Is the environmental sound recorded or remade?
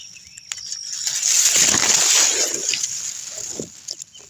recorded